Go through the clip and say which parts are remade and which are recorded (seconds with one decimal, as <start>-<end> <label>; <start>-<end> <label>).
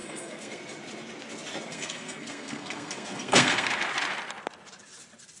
0.0-0.6 remade; 0.6-1.7 recorded; 1.7-3.7 remade; 3.7-5.4 recorded